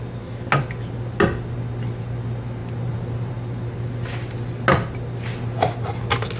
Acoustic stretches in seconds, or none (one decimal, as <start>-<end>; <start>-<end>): 0.0-6.4

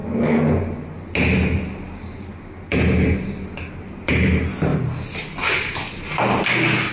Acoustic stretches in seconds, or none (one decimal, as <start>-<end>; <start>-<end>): 0.0-6.9

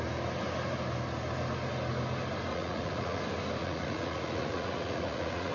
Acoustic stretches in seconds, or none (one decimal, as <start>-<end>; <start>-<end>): 0.0-2.5; 3.2-3.6

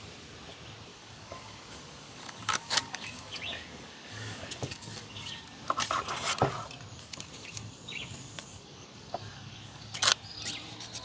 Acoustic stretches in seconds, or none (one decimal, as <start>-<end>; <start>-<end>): 0.0-0.9; 5.4-6.9; 10.0-11.0

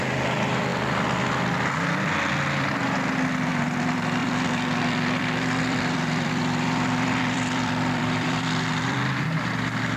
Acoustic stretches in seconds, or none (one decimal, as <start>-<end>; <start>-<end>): 0.7-3.5

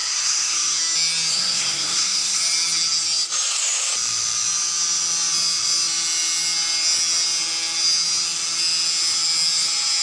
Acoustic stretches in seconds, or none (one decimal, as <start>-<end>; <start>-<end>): 0.8-1.3; 2.4-10.0

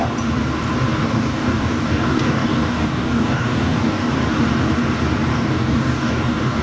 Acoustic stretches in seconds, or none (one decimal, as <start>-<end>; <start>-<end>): 0.0-1.0; 4.1-5.3